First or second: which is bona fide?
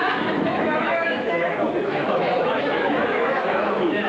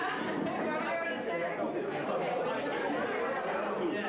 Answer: second